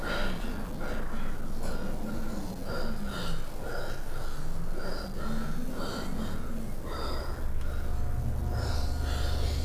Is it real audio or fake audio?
real